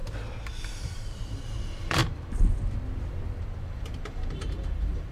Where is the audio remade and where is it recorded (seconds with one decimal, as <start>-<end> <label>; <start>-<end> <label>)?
0.0-0.7 recorded; 0.7-2.0 remade; 2.0-3.6 recorded; 3.6-5.1 remade